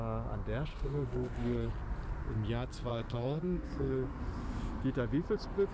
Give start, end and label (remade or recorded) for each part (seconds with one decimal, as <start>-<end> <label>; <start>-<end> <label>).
0.0-0.7 recorded; 0.7-1.7 remade; 1.7-2.9 recorded; 2.9-4.2 remade; 4.2-5.7 recorded